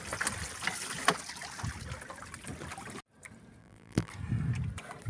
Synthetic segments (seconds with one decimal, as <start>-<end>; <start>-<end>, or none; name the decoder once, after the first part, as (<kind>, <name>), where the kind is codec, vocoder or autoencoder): 3.6-4.1 (vocoder, BigVGAN v2)